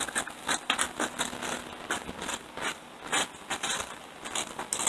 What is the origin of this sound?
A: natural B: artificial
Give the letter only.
A